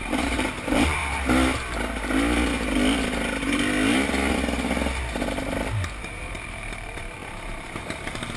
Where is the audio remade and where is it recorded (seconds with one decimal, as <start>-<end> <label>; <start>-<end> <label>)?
0.0-1.0 remade; 1.0-6.0 recorded; 6.0-8.4 remade